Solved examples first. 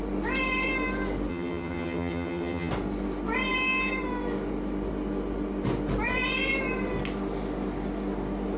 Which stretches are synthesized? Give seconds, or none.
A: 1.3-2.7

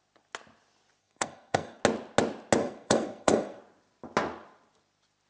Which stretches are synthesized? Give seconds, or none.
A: 1.0-1.8; 2.6-3.6

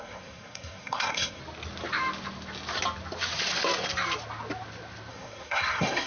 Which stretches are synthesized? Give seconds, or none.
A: 0.0-1.4; 5.1-6.1

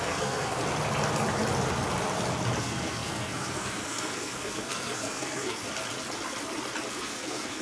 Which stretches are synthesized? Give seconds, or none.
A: 0.0-0.6; 2.6-5.6; 6.9-7.6

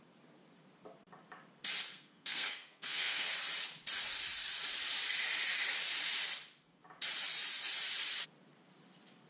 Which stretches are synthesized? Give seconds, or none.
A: 1.9-3.3

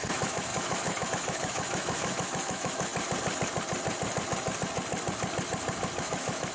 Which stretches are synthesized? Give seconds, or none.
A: 0.0-2.9; 6.0-6.5

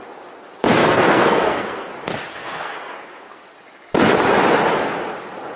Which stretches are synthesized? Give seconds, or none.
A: 0.8-1.9; 2.3-3.4